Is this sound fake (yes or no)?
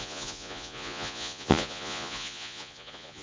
yes